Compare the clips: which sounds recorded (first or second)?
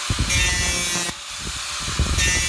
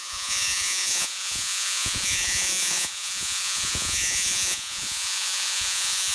first